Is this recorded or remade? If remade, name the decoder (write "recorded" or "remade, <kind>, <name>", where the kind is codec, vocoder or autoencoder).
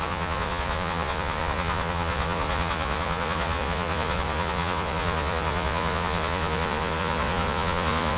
remade, vocoder, Vocos